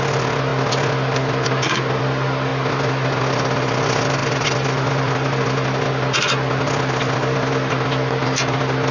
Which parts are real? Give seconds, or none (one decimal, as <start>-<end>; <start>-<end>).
0.0-8.9